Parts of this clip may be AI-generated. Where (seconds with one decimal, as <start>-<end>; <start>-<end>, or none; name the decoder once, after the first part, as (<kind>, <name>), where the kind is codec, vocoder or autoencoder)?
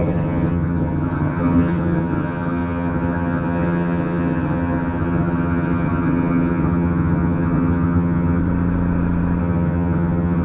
0.0-8.4 (vocoder, HiFi-GAN); 9.4-10.4